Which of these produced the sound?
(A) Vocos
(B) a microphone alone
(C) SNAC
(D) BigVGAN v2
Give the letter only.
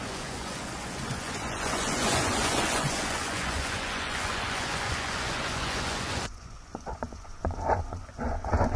A